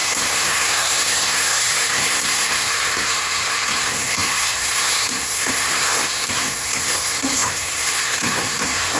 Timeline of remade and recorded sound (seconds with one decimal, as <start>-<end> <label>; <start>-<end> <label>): 0.0-9.0 remade